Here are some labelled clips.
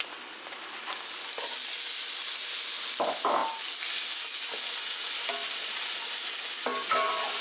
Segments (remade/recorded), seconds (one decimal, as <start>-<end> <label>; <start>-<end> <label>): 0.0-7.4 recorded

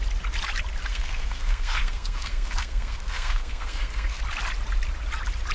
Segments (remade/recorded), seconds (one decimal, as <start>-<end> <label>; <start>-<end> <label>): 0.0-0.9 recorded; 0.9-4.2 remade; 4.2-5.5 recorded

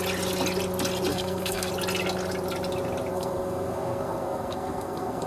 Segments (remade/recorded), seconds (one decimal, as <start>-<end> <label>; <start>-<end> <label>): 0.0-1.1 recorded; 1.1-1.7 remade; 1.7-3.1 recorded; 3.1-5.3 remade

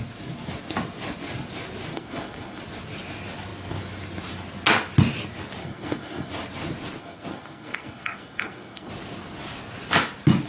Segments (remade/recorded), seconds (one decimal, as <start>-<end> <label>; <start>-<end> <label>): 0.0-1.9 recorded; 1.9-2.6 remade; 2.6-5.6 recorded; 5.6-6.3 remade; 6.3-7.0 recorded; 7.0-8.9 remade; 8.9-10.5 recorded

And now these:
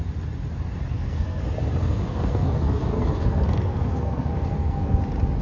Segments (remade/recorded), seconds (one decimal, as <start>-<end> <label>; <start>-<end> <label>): 0.0-0.9 recorded; 0.9-1.4 remade; 1.4-1.8 recorded; 1.8-5.0 remade; 5.0-5.4 recorded